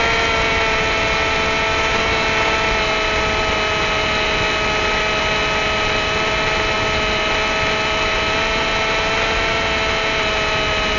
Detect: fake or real real